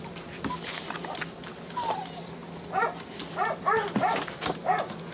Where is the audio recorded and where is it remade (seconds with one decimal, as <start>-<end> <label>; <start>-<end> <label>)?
0.0-5.1 recorded